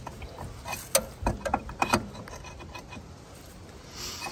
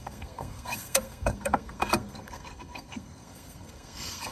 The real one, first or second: first